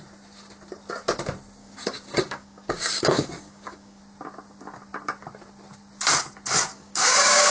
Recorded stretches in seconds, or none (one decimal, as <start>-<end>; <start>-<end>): 0.0-1.6; 4.0-6.7